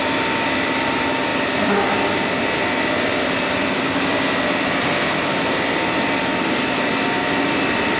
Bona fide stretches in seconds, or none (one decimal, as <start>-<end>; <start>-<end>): 1.3-2.8